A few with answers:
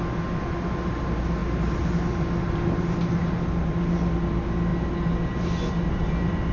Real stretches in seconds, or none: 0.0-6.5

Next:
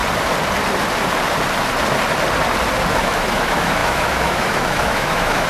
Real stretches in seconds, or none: 0.0-2.9